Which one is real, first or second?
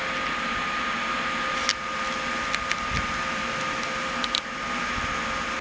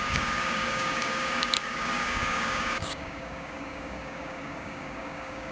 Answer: first